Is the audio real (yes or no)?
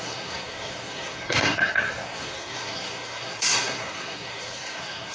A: no